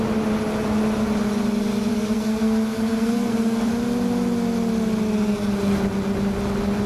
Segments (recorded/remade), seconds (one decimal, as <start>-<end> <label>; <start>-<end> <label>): 0.0-1.9 recorded; 1.9-3.7 remade; 3.7-6.9 recorded